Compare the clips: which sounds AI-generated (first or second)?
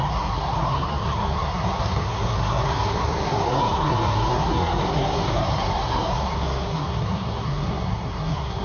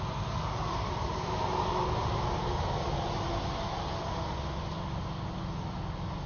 first